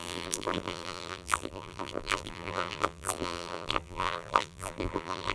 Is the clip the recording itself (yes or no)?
no